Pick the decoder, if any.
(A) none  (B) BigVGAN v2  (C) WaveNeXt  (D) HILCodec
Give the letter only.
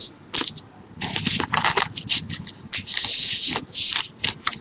A